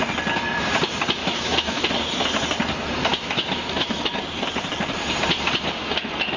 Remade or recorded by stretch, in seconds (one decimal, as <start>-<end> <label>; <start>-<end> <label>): 0.0-1.2 recorded; 1.2-1.9 remade; 1.9-3.1 recorded; 3.1-4.2 remade; 4.2-6.4 recorded